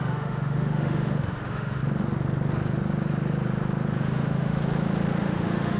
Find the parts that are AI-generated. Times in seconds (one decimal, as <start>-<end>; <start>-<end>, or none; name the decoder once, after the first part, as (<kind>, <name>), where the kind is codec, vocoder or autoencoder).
0.0-1.8 (autoencoder, DAC-VAE); 4.0-4.6; 5.2-5.8

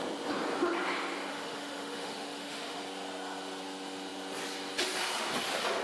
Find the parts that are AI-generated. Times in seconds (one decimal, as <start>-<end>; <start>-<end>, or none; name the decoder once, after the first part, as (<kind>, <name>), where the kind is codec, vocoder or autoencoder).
1.3-2.8 (autoencoder, DAC-VAE)

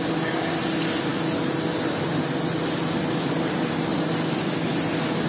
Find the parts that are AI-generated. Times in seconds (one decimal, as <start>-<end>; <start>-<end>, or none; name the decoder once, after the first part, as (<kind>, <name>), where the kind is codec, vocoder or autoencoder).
none

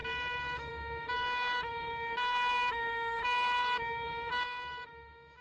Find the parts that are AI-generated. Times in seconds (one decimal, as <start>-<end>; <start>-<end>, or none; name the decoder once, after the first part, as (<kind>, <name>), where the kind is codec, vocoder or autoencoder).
0.0-5.4 (autoencoder, DAC-VAE)